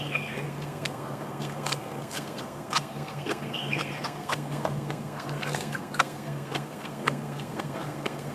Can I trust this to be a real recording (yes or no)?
no